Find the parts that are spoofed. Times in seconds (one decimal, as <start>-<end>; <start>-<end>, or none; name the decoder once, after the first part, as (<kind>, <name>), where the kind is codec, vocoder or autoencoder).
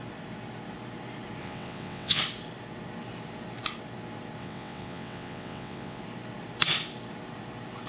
1.4-2.2 (vocoder, WaveNeXt); 4.4-6.0